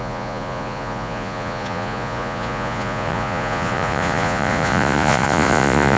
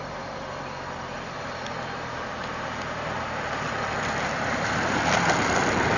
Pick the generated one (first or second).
first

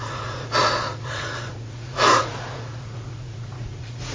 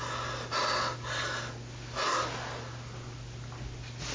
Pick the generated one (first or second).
first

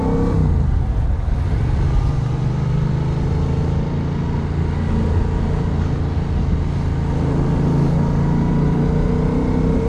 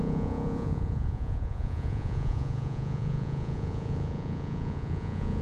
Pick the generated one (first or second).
second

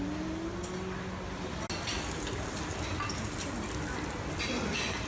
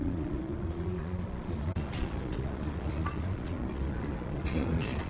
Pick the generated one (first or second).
second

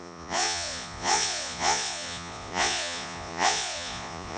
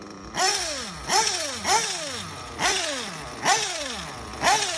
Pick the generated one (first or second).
first